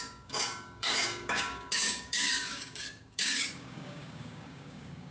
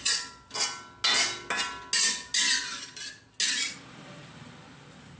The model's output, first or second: first